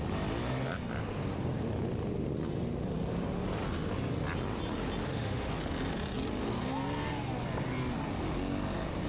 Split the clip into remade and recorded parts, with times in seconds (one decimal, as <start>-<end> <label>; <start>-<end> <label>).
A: 0.0-5.0 recorded; 5.0-5.5 remade; 5.5-9.1 recorded